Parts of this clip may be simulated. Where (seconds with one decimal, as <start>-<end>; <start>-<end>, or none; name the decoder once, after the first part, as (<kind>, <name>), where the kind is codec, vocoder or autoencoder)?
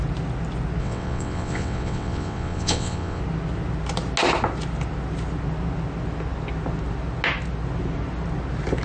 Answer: 0.8-3.2 (vocoder, WaveNeXt)